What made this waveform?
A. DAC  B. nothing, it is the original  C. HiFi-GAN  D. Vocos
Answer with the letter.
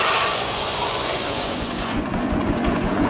D